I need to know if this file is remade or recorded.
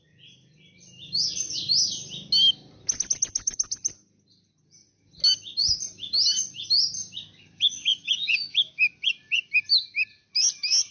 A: recorded